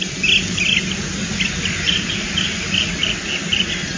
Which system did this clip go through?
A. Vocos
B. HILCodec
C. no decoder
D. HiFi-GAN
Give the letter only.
C